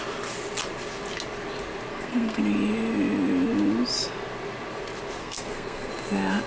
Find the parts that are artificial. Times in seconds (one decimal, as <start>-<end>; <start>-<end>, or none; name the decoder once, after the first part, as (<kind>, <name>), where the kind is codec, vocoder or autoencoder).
1.9-2.4 (codec, SNAC); 5.2-5.9